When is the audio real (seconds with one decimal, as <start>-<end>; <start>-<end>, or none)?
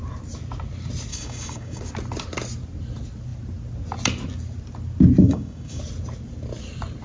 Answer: 0.0-1.1; 1.8-5.2; 5.8-7.0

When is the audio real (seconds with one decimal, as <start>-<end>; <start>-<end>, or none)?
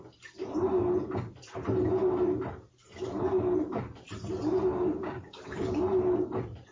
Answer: 0.0-5.0; 5.8-6.7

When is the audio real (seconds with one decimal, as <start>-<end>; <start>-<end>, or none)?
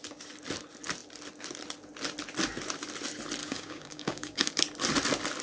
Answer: 0.0-3.4; 4.5-5.4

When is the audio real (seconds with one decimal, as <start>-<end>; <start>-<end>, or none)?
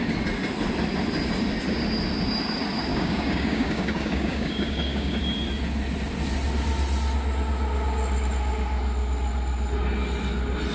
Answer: 0.0-2.9; 5.2-10.7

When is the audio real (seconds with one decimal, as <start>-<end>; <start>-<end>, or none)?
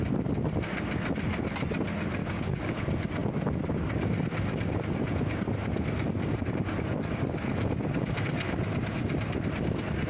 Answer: 0.0-2.2; 2.8-10.1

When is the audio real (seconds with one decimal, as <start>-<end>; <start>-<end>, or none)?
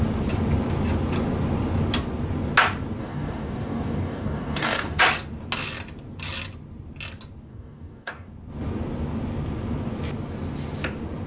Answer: 0.0-3.0; 5.0-7.5; 8.3-11.3